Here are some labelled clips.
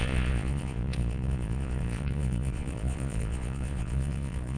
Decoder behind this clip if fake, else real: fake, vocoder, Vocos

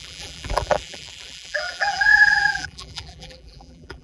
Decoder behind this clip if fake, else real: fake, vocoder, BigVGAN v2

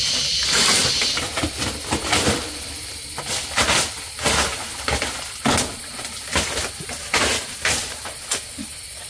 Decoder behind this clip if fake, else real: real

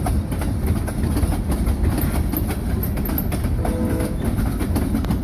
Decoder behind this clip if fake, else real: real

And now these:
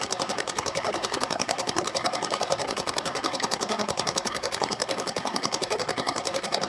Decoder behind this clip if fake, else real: fake, codec, SNAC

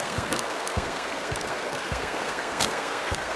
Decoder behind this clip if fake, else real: fake, codec, SNAC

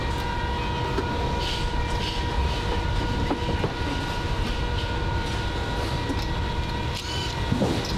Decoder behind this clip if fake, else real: real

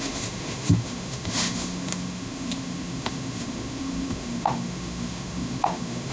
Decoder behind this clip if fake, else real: fake, autoencoder, DAC-VAE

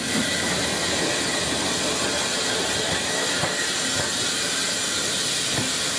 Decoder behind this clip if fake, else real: real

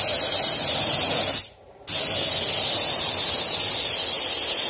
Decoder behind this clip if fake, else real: real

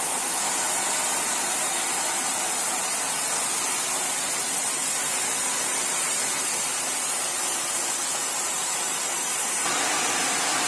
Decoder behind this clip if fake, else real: real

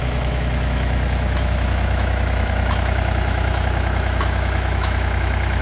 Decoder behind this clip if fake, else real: fake, autoencoder, DAC-VAE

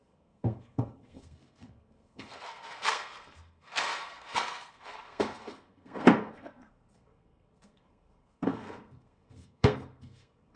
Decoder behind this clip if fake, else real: fake, codec, SNAC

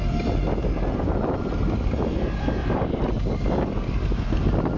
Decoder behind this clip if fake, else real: real